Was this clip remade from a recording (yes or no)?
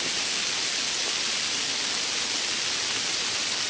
no